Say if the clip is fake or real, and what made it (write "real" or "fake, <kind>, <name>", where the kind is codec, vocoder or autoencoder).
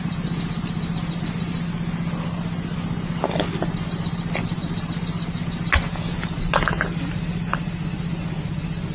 real